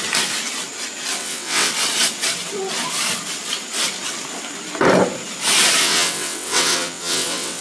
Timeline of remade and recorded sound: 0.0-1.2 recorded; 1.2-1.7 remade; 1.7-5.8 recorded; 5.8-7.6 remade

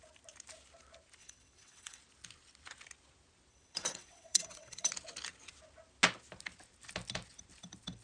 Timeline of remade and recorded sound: 0.0-1.2 recorded; 1.2-2.0 remade; 2.0-3.5 recorded; 3.5-4.9 remade; 4.9-8.0 recorded

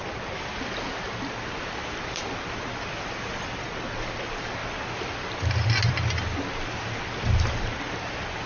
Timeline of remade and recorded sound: 0.0-8.5 recorded

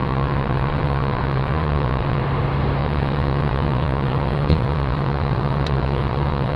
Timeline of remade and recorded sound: 0.0-2.2 remade; 2.2-2.8 recorded; 2.8-6.6 remade

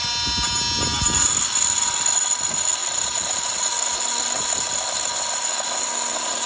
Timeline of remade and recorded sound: 0.0-6.5 recorded

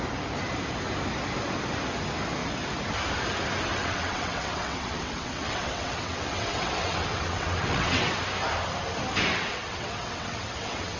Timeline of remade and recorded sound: 0.0-3.7 recorded; 3.7-8.2 remade; 8.2-9.3 recorded; 9.3-11.0 remade

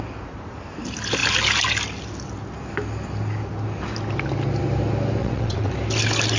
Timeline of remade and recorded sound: 0.0-5.2 recorded; 5.2-5.7 remade; 5.7-6.4 recorded